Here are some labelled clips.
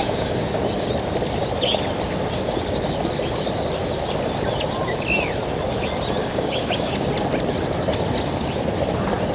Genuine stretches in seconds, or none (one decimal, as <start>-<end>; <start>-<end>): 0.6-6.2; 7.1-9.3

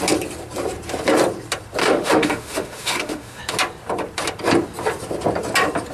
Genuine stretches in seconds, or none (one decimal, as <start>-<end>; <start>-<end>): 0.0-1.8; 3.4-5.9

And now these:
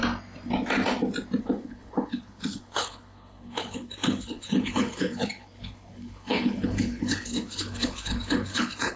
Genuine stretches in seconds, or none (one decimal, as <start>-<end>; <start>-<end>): 0.0-1.4